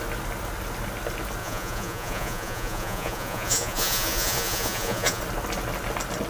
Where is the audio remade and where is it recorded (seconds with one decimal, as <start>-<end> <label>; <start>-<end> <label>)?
0.0-1.4 recorded; 1.4-5.2 remade; 5.2-6.3 recorded